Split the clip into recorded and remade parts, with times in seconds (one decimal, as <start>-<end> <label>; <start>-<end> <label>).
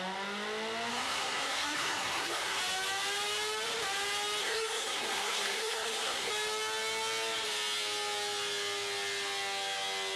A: 0.0-0.9 recorded; 0.9-2.6 remade; 2.6-4.4 recorded; 4.4-6.3 remade; 6.3-10.2 recorded